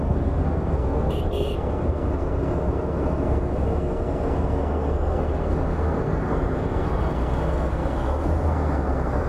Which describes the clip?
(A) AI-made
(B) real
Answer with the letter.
A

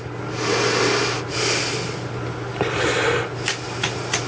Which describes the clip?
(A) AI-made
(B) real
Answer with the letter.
B